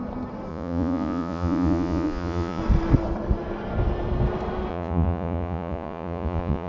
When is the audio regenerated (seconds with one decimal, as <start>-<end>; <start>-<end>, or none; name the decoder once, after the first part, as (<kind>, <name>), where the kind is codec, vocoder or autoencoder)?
0.5-2.6 (vocoder, Vocos); 4.7-6.7